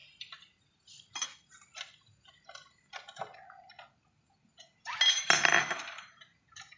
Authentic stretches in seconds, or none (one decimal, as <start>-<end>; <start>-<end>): 0.0-6.8

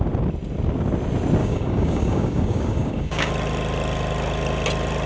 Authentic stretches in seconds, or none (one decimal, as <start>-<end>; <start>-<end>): 0.0-1.4; 3.3-5.1

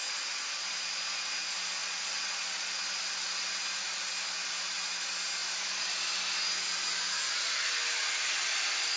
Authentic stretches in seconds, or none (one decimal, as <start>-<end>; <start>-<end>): 0.0-1.8; 2.8-9.0

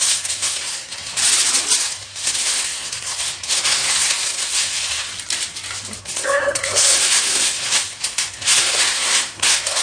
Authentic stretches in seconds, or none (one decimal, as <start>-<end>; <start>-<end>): 1.2-1.8; 5.1-6.0

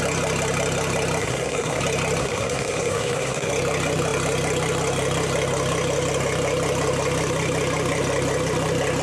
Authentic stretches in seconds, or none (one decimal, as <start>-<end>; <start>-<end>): 0.0-1.2; 1.8-2.2; 3.5-9.0

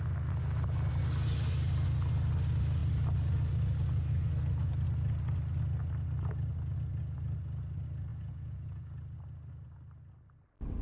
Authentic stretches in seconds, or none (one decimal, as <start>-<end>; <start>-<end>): 0.0-8.1; 9.0-10.8

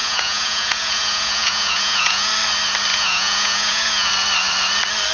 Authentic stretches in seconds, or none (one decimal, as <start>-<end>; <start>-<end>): 2.3-2.9; 4.1-5.1